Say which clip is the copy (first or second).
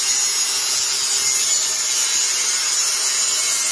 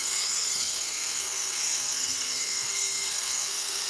second